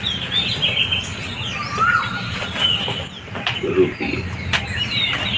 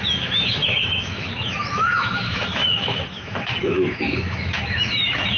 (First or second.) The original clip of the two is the first